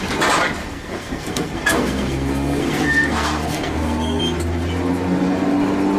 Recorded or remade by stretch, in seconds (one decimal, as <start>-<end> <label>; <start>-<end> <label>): 0.0-0.6 recorded; 0.6-4.2 remade; 4.2-6.0 recorded